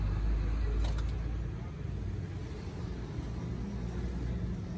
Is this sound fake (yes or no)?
no